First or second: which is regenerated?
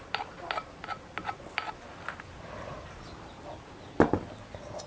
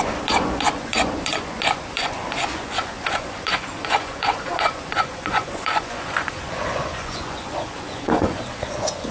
second